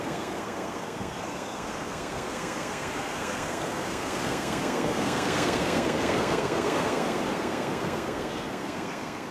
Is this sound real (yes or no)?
no